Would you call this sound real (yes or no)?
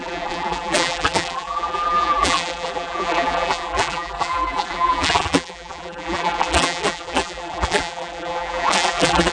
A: no